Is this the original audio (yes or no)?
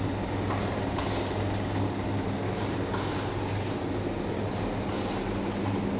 yes